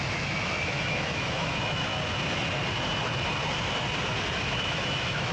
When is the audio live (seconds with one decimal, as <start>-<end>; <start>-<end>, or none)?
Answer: 1.9-4.5